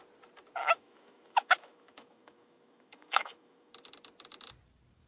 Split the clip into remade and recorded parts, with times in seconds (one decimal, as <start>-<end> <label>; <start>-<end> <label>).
0.0-0.6 recorded; 0.6-3.7 remade; 3.7-5.1 recorded